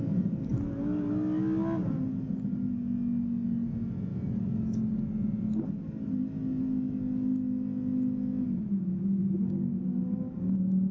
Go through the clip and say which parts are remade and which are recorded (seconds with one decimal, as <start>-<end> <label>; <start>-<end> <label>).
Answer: 0.0-10.9 recorded